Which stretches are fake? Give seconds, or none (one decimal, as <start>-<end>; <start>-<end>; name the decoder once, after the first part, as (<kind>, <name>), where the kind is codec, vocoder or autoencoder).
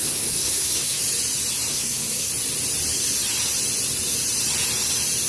0.0-1.0 (codec, SNAC); 1.7-2.3